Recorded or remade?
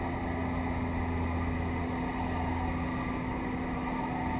recorded